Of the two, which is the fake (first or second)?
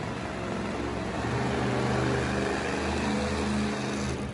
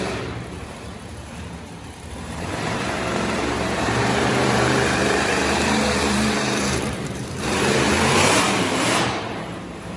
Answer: second